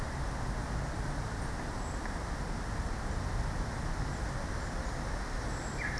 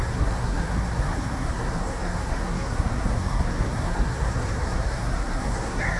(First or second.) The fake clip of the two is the second